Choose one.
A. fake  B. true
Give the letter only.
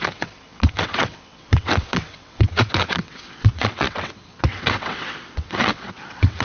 A